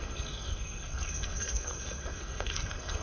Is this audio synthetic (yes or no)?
yes